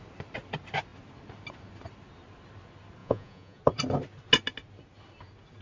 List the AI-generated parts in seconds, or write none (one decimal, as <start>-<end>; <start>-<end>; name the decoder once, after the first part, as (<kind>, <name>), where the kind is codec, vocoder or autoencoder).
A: 3.0-3.6 (vocoder, Vocos)